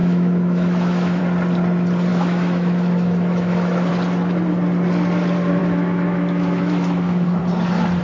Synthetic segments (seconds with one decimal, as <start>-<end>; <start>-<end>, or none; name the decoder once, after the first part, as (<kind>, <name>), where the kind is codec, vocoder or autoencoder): 0.0-1.2 (autoencoder, DAC-VAE); 2.1-3.9; 5.6-7.4